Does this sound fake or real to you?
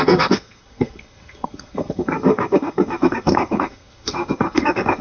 fake